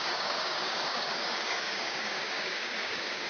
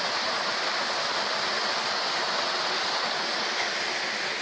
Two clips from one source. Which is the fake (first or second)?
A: first